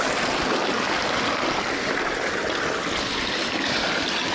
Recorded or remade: recorded